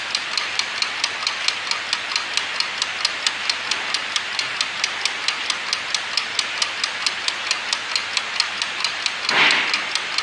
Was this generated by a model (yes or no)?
no